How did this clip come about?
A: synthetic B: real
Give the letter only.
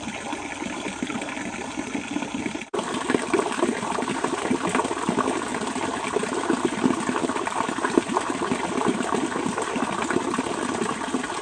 A